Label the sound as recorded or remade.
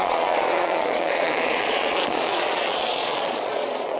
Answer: remade